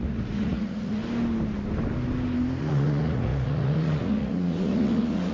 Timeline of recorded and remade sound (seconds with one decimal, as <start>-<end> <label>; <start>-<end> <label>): 0.0-1.0 remade; 1.0-2.6 recorded; 2.6-5.3 remade